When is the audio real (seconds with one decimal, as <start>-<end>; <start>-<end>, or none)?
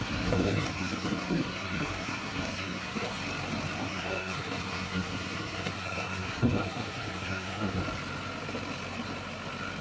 3.2-3.8; 7.8-9.8